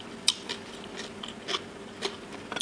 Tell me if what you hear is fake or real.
real